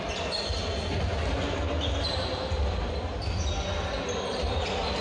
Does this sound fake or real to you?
real